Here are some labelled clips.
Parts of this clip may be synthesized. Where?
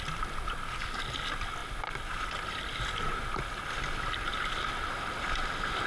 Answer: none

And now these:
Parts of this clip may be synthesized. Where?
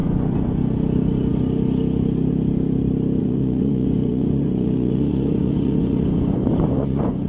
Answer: 0.0-0.6 (vocoder, Vocos); 3.2-7.3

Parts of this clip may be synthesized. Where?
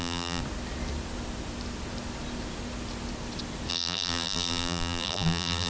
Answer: 0.0-0.4 (vocoder, BigVGAN v2); 3.7-5.7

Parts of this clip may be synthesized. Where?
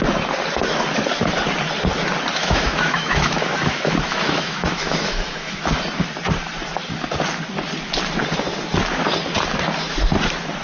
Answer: 2.3-5.7 (autoencoder, DAC-VAE)